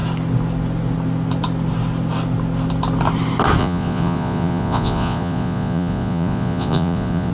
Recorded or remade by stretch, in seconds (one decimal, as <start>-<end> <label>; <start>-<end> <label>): 0.0-3.6 recorded; 3.6-7.3 remade